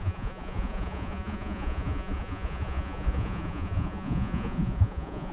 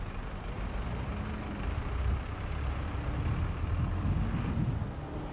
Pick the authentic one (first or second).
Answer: second